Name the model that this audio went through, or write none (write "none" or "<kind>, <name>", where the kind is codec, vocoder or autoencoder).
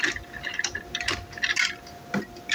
none